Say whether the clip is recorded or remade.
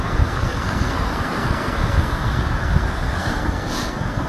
remade